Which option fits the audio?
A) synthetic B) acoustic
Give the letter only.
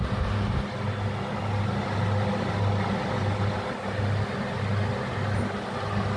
B